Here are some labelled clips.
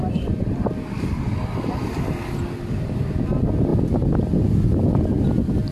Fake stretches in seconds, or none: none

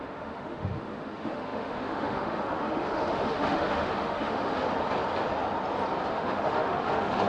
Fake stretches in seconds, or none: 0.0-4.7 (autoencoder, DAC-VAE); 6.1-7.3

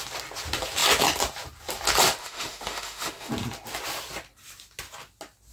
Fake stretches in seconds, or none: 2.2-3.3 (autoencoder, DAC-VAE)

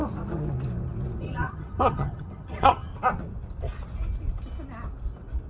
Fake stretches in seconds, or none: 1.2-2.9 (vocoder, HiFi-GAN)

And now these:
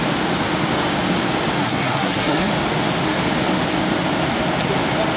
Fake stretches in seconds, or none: 1.6-2.5 (codec, SNAC)